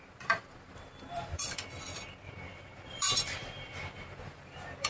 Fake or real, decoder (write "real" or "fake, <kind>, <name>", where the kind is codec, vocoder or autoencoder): fake, vocoder, BigVGAN v2